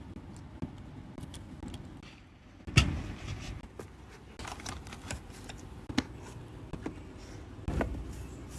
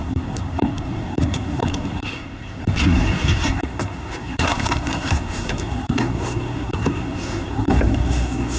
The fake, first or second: second